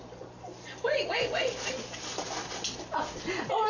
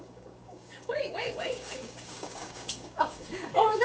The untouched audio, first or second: first